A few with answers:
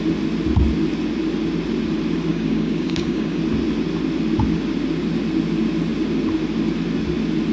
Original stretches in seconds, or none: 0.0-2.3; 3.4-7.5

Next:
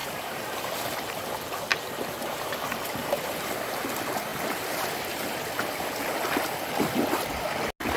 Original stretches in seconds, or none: 0.8-1.7; 2.5-3.0; 3.9-8.0

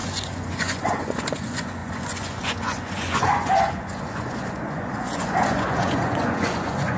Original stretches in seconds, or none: none

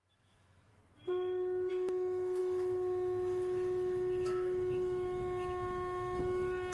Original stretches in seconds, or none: 0.8-1.7